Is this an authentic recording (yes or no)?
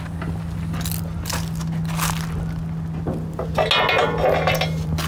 yes